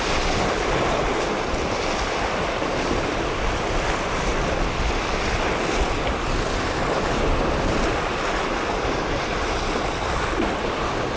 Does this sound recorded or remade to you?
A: recorded